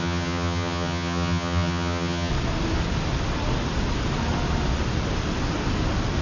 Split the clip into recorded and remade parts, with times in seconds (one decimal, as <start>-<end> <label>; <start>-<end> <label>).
0.0-2.3 remade; 2.3-6.2 recorded